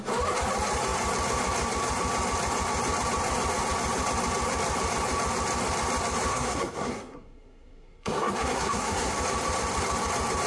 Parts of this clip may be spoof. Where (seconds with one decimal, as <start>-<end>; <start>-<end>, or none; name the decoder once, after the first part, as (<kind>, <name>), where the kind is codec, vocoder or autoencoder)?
6.3-9.1 (codec, SNAC)